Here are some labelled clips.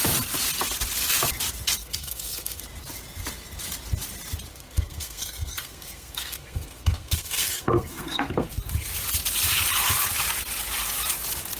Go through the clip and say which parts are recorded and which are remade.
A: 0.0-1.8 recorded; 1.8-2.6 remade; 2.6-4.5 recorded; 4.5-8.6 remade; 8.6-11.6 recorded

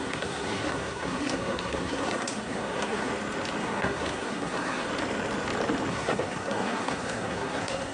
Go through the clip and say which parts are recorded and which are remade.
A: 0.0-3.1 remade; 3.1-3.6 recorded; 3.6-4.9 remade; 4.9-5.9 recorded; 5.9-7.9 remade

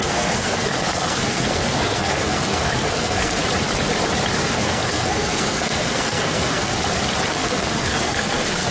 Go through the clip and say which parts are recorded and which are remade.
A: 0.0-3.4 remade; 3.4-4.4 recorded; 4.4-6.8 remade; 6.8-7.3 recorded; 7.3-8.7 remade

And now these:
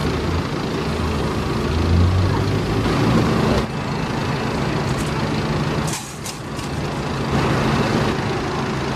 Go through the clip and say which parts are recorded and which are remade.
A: 0.0-9.0 recorded

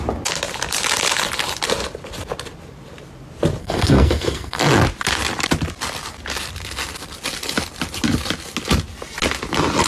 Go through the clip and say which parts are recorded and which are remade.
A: 0.0-3.6 recorded; 3.6-4.6 remade; 4.6-9.9 recorded

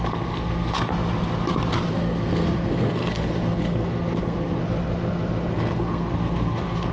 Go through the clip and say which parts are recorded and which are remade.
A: 0.0-0.9 remade; 0.9-1.9 recorded; 1.9-4.6 remade; 4.6-5.5 recorded; 5.5-6.9 remade